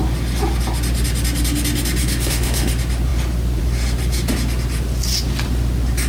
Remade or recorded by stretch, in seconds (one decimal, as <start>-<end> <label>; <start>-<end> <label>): 0.0-2.0 recorded; 2.0-2.7 remade; 2.7-6.1 recorded